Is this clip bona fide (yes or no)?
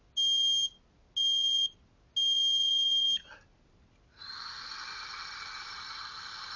yes